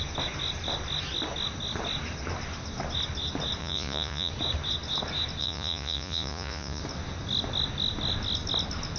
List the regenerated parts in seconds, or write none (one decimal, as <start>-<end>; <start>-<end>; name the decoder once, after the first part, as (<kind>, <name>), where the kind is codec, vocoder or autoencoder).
3.6-4.3 (vocoder, Vocos); 5.4-6.8